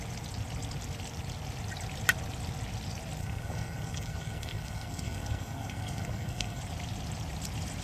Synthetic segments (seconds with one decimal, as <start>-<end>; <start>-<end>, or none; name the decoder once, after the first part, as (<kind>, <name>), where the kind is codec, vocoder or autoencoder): 3.2-6.6 (codec, SNAC)